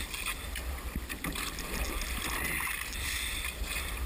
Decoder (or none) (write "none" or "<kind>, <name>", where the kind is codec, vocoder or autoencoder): none